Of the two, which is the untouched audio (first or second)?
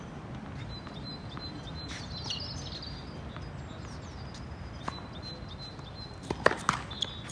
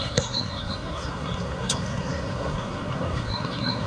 first